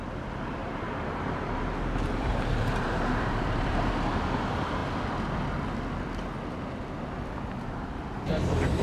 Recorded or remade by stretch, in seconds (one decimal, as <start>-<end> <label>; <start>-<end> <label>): 0.0-0.6 recorded; 0.6-3.9 remade; 3.9-8.8 recorded